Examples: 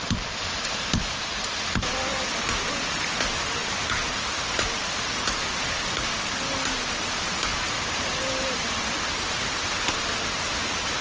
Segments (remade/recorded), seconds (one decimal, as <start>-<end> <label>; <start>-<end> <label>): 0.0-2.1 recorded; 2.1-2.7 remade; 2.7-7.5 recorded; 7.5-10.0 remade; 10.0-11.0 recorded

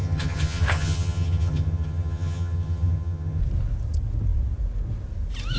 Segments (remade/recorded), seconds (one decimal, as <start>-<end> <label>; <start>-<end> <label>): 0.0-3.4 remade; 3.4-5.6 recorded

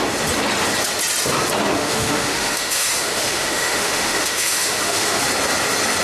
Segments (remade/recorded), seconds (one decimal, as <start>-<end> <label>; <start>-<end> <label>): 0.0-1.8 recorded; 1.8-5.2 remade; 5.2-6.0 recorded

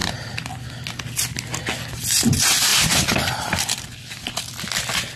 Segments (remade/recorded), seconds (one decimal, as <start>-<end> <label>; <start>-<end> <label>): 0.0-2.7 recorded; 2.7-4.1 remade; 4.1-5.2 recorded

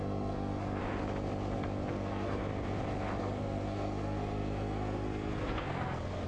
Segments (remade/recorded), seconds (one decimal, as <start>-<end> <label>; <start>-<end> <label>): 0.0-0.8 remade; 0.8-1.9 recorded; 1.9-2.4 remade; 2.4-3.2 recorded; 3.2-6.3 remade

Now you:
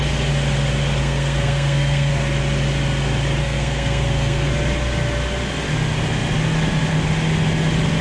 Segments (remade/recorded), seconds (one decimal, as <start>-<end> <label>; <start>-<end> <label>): 0.0-1.0 recorded; 1.0-2.1 remade; 2.1-3.4 recorded; 3.4-4.5 remade; 4.5-8.0 recorded

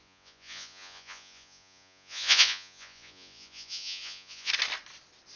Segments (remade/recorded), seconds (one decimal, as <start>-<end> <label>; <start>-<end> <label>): 0.0-4.5 remade; 4.5-5.4 recorded